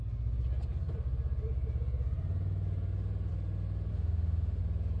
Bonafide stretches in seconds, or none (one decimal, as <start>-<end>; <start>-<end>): 0.0-3.9; 4.6-5.0